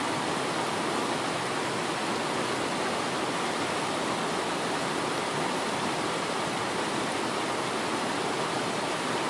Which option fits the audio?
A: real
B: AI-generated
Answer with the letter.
A